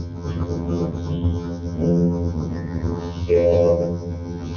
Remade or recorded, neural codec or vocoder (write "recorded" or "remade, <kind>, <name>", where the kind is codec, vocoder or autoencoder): remade, vocoder, HiFi-GAN